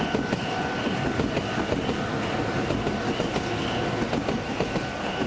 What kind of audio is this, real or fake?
real